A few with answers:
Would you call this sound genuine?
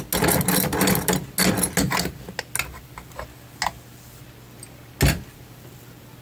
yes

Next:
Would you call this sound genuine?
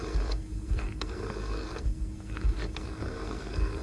no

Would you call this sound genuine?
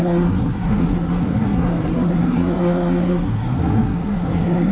no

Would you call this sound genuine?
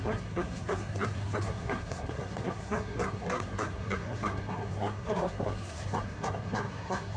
no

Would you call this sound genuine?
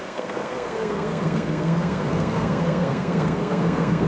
no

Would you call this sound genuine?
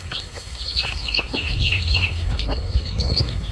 no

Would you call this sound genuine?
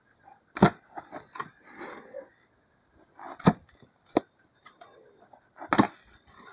yes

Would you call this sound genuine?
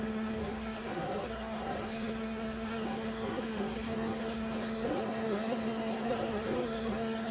no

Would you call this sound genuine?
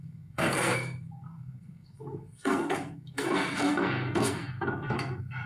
no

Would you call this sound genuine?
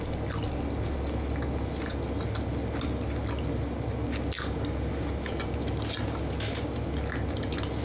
yes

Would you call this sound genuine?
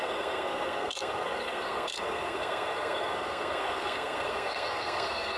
no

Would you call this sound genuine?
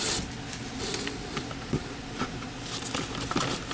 yes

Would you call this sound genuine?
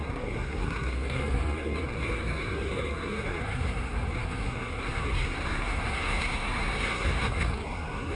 no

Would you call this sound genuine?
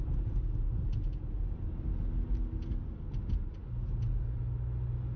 yes